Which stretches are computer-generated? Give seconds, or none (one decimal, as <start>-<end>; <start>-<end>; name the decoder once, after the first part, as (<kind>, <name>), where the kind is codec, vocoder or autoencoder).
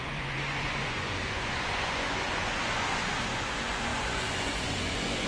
0.0-5.3 (vocoder, Vocos)